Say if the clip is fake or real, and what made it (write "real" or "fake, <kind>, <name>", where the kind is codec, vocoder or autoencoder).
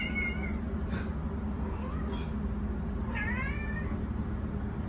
real